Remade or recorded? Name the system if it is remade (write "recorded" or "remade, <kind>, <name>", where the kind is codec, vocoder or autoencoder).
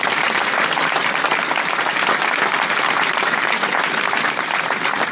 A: recorded